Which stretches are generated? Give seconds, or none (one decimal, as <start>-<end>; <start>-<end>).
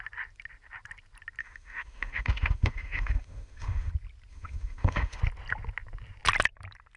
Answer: 1.4-3.9; 4.3-5.2